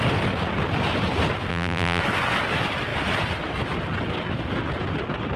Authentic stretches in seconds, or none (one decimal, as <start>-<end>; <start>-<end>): 0.0-1.5; 2.0-5.4